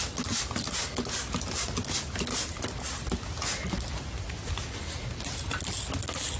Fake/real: real